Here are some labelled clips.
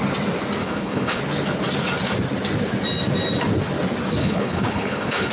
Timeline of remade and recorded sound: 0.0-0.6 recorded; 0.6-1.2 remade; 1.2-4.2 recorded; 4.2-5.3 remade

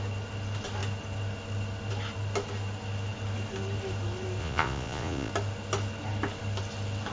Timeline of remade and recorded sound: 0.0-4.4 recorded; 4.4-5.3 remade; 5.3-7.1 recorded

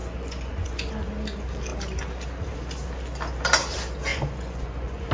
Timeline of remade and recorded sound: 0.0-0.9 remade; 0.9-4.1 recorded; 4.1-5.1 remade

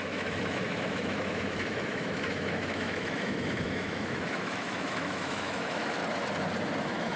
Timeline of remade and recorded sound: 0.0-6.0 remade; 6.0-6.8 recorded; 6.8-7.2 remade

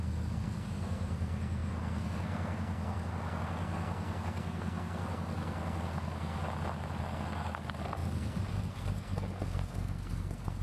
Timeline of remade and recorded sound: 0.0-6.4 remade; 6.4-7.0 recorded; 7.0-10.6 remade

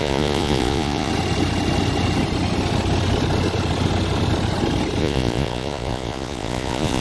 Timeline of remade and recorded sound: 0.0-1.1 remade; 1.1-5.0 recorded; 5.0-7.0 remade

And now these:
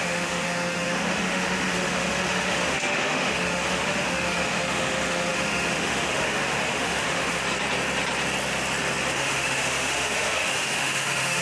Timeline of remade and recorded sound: 0.0-7.4 remade; 7.4-9.1 recorded; 9.1-11.4 remade

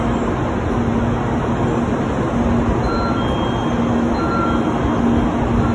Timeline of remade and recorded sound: 0.0-5.7 recorded